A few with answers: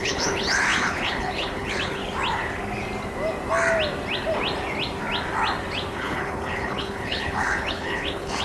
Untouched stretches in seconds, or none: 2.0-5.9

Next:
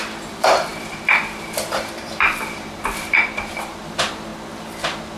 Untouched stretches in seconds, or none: 4.3-5.2

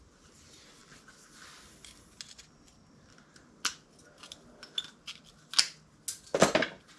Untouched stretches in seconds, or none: 0.0-7.0

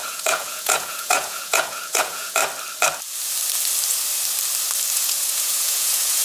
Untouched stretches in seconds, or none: 2.4-4.9